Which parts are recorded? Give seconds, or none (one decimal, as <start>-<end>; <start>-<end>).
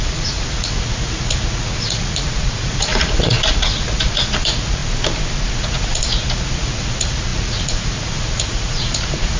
4.8-5.5